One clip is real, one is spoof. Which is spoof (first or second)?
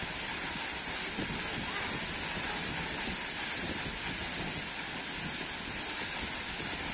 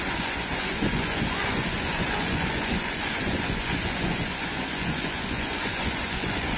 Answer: second